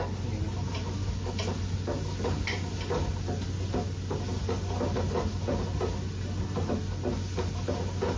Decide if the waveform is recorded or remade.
recorded